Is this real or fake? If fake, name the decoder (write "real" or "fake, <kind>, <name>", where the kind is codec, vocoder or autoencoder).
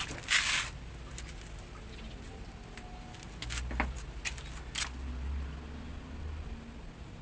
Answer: real